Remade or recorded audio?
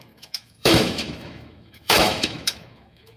remade